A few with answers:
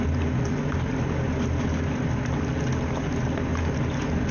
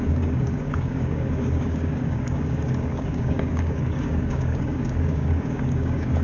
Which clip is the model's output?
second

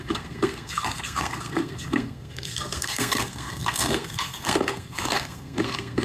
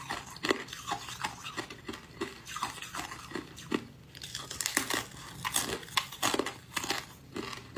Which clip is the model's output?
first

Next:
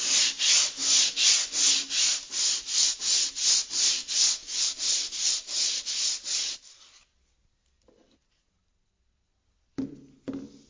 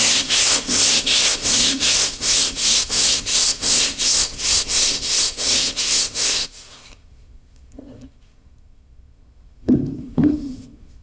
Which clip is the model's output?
second